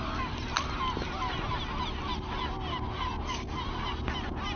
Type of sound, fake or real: real